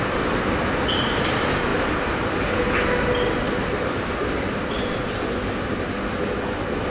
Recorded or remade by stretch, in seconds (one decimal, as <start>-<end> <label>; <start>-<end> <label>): 0.0-6.9 recorded